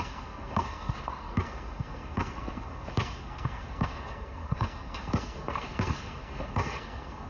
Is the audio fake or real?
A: fake